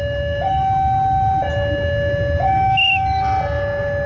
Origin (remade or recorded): recorded